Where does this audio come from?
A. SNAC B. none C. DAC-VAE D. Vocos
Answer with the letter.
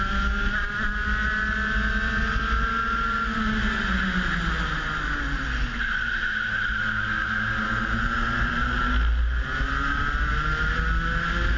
B